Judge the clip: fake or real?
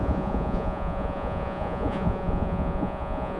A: fake